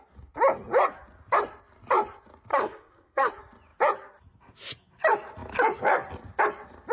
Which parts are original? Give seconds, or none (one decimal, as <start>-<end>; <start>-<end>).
0.0-2.5; 3.3-6.9